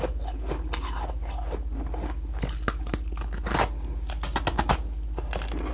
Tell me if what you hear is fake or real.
real